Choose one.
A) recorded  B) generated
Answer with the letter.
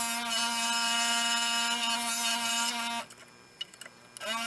A